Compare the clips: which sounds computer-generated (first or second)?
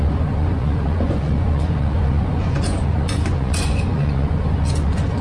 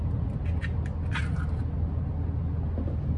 first